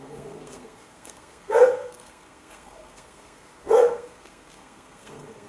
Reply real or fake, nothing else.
fake